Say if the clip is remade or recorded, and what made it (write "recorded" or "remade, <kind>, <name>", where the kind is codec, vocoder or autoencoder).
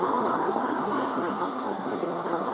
remade, codec, SNAC